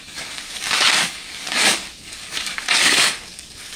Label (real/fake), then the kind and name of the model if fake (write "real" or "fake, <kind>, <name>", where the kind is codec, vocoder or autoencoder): fake, codec, DAC